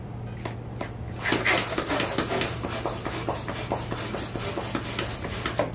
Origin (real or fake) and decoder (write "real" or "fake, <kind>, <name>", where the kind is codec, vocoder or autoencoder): real